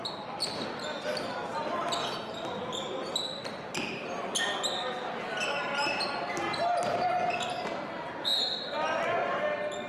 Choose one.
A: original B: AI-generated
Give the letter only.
A